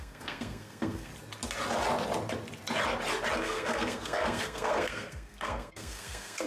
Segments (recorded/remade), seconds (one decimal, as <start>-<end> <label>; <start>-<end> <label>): 0.0-1.1 remade; 1.1-3.4 recorded; 3.4-6.5 remade